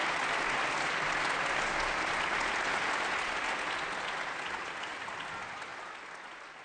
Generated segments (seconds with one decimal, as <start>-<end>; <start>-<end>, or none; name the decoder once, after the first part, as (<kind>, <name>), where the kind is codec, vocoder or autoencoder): none